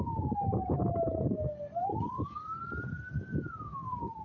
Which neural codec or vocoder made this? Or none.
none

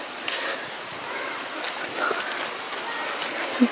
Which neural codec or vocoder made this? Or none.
vocoder, BigVGAN v2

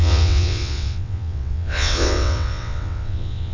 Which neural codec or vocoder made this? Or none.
vocoder, WaveNeXt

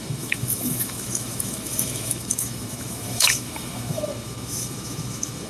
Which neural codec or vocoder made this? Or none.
autoencoder, DAC-VAE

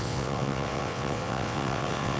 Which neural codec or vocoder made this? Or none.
vocoder, WaveNeXt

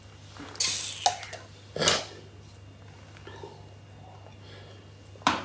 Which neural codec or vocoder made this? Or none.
none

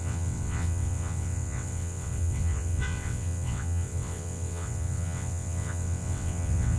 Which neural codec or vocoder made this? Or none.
vocoder, WaveNeXt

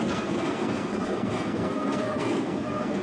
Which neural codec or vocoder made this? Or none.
codec, SNAC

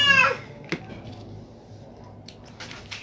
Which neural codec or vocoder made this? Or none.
none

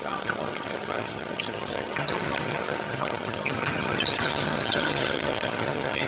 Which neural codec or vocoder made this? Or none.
vocoder, HiFi-GAN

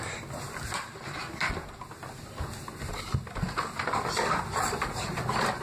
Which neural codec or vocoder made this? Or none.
none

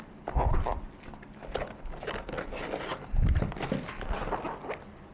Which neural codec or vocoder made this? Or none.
none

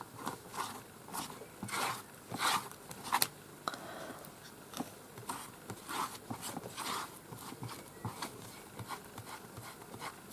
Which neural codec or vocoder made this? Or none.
none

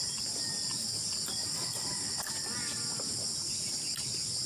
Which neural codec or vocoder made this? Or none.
none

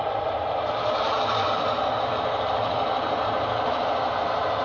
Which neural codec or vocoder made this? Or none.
vocoder, BigVGAN v2